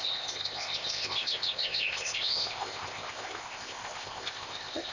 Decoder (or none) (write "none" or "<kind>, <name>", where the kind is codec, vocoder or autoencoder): codec, ZipCodec